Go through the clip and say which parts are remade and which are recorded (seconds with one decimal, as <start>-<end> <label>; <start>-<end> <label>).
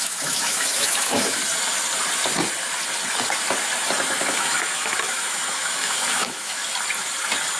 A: 0.0-1.4 remade; 1.4-4.2 recorded; 4.2-6.6 remade; 6.6-7.6 recorded